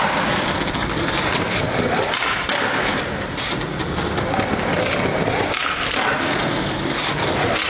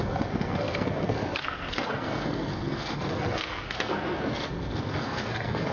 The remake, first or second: second